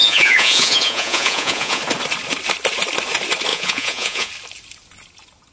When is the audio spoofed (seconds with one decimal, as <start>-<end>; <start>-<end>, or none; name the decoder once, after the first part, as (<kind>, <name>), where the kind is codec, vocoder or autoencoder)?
0.0-1.8 (vocoder, Vocos); 3.5-4.3